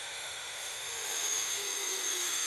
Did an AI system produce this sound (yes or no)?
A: yes